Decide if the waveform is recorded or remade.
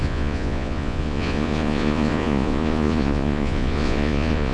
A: remade